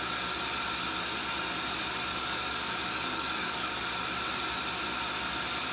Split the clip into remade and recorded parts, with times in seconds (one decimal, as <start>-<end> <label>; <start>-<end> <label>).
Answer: 0.0-2.1 recorded; 2.1-3.8 remade; 3.8-5.7 recorded